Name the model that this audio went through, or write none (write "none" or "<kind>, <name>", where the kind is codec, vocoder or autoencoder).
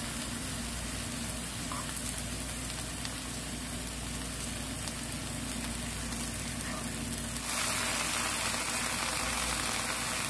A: none